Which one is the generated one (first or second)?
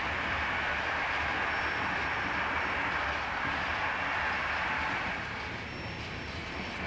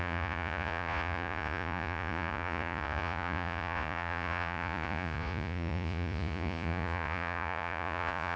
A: second